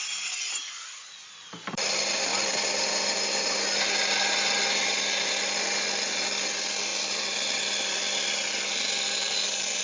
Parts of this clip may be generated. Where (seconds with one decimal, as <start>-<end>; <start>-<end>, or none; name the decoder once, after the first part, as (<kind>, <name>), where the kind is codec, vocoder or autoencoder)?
none